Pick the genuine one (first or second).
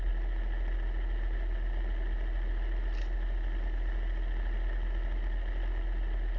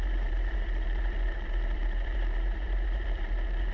first